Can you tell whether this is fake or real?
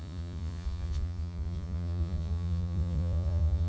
fake